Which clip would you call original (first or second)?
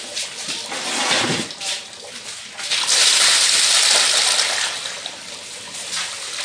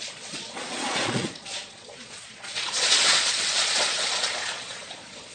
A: first